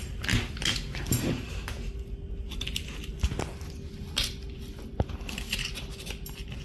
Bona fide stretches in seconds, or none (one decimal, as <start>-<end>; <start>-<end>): 0.0-6.6

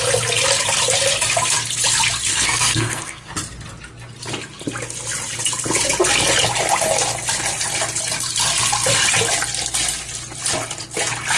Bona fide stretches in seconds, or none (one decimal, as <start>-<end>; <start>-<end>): 0.0-2.3; 3.3-11.4

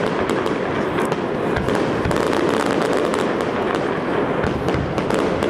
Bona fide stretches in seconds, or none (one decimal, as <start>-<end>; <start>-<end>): 0.0-5.5

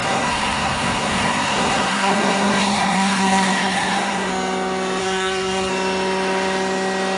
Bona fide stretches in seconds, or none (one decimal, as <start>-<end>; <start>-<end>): 4.3-5.0; 5.7-7.2

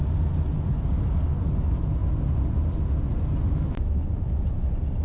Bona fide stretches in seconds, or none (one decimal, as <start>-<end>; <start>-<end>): 0.0-5.0

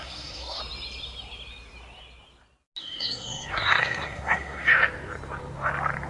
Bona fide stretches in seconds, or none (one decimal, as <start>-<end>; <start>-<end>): 0.6-2.8; 4.7-6.1

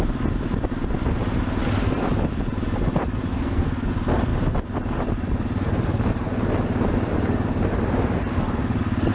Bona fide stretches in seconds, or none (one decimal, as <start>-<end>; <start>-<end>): 0.0-3.3; 3.9-9.1